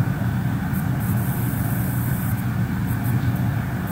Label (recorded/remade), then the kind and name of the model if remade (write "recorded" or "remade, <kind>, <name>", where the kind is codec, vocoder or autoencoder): recorded